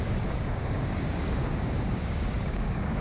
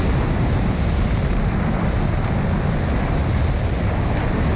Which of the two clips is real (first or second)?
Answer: second